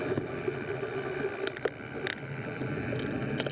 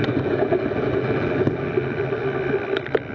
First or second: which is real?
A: second